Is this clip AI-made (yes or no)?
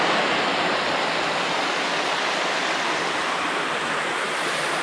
no